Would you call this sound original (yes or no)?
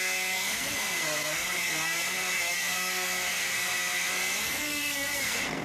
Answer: no